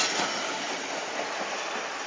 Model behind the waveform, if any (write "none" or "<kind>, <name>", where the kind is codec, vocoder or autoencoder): none